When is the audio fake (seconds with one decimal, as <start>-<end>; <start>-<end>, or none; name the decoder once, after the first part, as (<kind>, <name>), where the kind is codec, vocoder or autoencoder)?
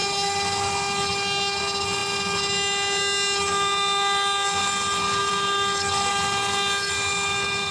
none